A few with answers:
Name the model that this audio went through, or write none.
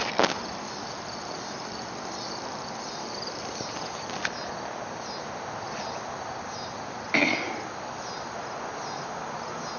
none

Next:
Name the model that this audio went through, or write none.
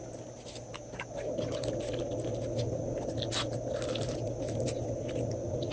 none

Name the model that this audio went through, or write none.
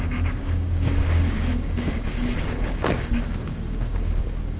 codec, DAC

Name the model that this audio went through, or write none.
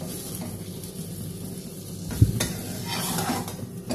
none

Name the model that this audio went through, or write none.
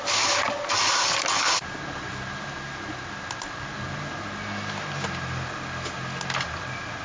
none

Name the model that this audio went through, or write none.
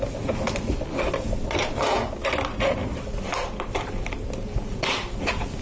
none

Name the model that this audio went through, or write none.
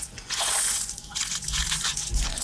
vocoder, Vocos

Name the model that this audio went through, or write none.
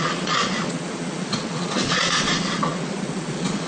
vocoder, Vocos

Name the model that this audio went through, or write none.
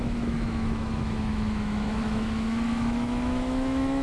autoencoder, DAC-VAE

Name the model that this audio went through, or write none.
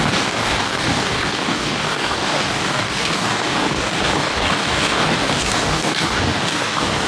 codec, DAC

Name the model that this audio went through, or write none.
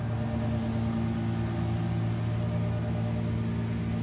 none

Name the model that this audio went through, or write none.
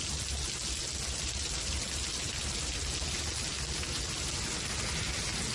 none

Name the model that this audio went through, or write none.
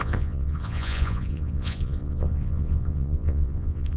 vocoder, Vocos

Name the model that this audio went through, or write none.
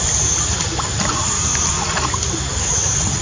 none